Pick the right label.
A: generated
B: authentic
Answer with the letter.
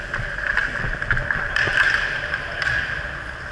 B